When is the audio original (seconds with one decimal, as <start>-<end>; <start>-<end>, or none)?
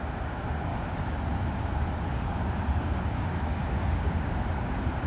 0.0-0.7; 1.2-2.1; 4.3-5.1